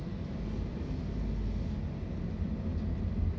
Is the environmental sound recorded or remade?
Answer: recorded